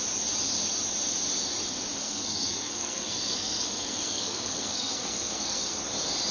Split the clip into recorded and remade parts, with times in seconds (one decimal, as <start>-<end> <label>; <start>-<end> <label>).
0.0-2.0 recorded; 2.0-5.8 remade; 5.8-6.3 recorded